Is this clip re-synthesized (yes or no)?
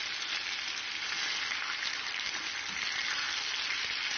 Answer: no